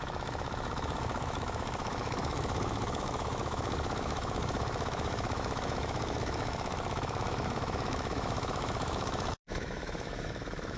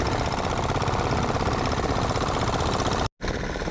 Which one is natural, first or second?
second